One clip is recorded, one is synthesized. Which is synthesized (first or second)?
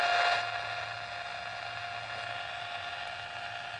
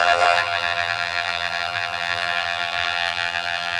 second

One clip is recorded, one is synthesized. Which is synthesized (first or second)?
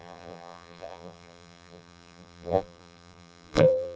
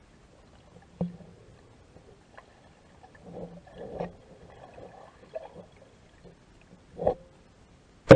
first